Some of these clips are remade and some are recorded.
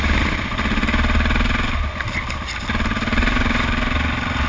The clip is recorded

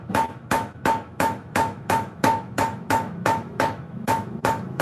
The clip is remade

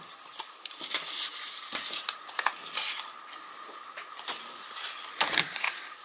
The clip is recorded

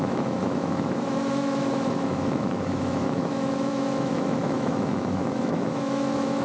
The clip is remade